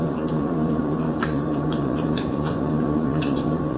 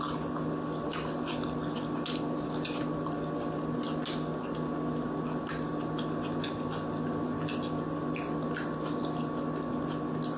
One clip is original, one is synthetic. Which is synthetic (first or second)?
first